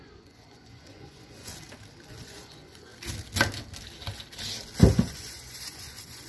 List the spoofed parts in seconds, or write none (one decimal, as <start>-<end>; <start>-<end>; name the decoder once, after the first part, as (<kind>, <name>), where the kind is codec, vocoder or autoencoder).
0.0-1.5 (vocoder, Vocos); 2.1-2.9; 4.9-6.3